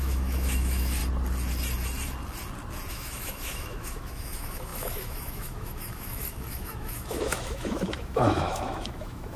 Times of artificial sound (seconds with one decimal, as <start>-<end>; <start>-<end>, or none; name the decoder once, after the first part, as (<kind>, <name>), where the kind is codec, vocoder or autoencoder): 0.0-1.0 (autoencoder, DAC-VAE); 2.9-9.4